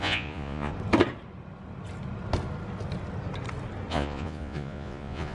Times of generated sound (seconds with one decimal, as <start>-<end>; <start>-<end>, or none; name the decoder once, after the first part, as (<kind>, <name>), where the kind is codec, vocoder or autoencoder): 0.0-0.7 (vocoder, Vocos); 3.9-5.3